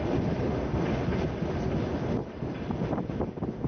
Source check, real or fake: fake